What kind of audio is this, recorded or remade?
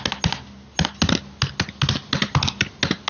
recorded